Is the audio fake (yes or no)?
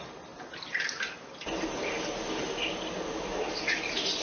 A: no